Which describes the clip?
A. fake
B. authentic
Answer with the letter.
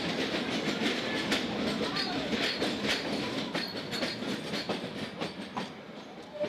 B